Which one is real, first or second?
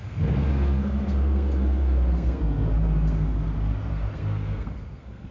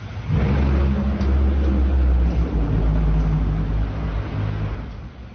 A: second